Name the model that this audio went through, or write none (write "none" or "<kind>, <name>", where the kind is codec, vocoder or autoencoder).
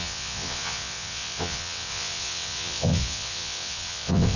vocoder, WaveNeXt